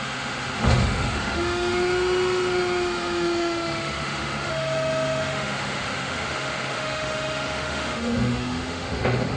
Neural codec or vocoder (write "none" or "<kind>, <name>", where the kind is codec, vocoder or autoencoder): autoencoder, DAC-VAE